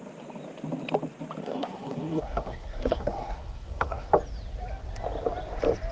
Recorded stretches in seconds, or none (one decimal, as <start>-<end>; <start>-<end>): 0.0-1.4; 4.1-5.9

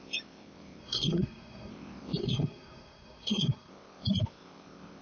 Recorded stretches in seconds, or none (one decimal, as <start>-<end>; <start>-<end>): 0.0-0.8; 1.7-2.2; 3.7-5.0

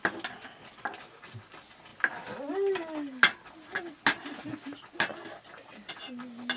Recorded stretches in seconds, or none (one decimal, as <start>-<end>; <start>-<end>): 0.0-6.6

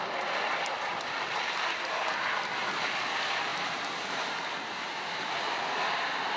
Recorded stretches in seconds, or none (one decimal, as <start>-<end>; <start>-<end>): 0.0-6.4

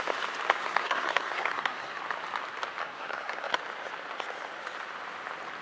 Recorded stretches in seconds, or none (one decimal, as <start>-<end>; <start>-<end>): 0.0-0.6; 2.0-2.8; 3.5-5.6

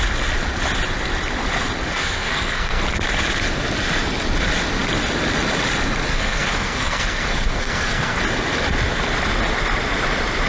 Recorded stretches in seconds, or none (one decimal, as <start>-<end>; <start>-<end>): 0.0-1.9; 2.8-6.1; 8.2-10.5